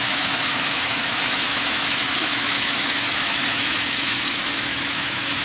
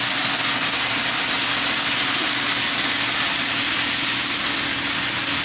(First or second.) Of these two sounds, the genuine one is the second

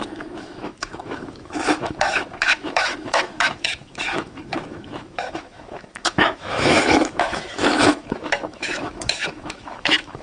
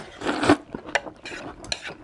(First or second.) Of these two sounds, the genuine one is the second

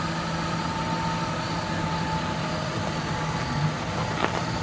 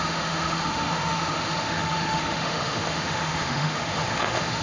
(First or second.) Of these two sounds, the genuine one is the first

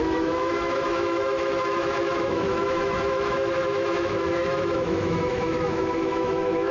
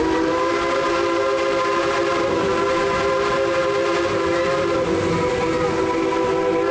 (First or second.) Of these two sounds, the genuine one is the second